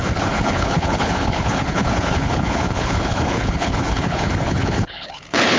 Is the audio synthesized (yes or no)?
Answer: yes